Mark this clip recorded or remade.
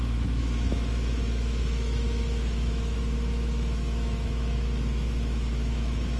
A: remade